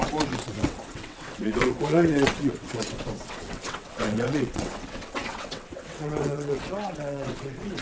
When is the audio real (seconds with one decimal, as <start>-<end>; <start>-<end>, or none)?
none